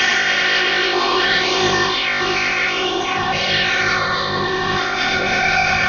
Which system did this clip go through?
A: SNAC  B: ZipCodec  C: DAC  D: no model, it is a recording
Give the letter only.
B